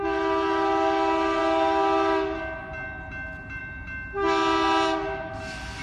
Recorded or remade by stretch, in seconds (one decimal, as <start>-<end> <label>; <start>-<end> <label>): 0.0-5.8 recorded